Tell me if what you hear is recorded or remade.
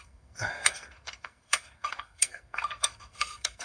remade